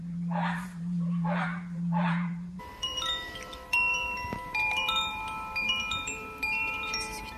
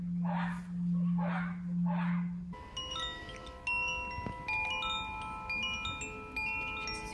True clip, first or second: second